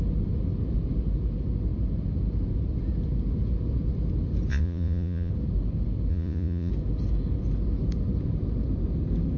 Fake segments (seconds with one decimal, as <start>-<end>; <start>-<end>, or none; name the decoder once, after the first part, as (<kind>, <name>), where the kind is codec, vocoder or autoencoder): 4.5-5.3 (vocoder, Vocos); 6.1-6.7